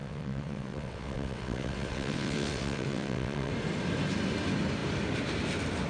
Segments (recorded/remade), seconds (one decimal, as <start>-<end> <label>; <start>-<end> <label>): 0.0-3.5 remade; 3.5-5.9 recorded